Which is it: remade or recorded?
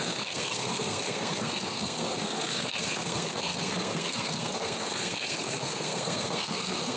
remade